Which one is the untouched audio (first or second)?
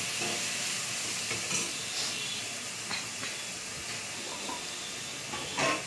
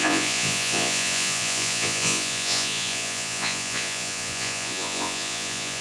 first